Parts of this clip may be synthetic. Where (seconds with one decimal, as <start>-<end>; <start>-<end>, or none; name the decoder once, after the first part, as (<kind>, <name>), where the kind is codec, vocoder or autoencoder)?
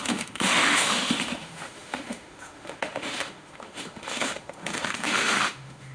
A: 0.0-5.9 (autoencoder, DAC-VAE)